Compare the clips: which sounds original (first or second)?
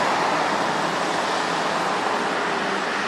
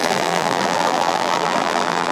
first